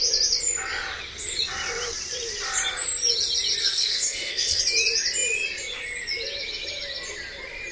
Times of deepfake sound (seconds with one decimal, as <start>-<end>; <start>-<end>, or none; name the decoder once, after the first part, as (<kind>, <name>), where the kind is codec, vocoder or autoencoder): 3.6-4.6 (codec, SNAC)